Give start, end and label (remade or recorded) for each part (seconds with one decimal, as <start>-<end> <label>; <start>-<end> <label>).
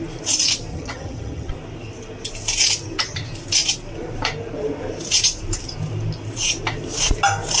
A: 0.0-0.7 recorded; 0.7-1.5 remade; 1.5-7.6 recorded